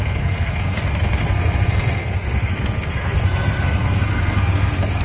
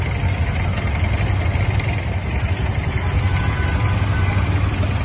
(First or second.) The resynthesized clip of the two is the first